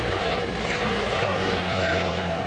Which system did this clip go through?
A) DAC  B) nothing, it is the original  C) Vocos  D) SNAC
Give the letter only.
D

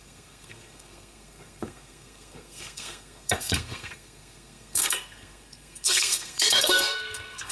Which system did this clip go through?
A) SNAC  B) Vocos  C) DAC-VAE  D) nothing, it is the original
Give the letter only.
A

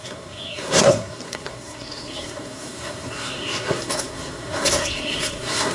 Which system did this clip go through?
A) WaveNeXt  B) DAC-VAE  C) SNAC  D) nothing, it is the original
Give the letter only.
C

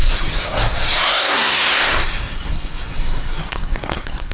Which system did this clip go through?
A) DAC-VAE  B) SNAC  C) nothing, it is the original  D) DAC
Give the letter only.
B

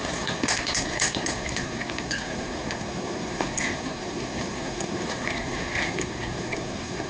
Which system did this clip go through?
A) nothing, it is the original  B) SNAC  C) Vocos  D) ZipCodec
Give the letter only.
B